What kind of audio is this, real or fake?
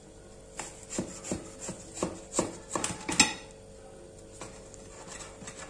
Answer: real